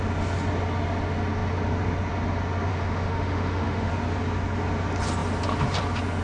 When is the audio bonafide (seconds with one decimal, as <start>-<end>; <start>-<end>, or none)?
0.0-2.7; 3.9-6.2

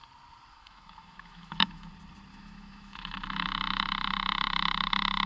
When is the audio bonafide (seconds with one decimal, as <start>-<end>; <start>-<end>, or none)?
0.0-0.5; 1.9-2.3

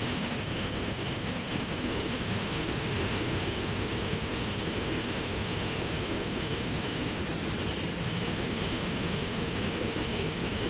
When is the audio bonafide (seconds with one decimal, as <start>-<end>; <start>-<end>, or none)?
7.2-8.0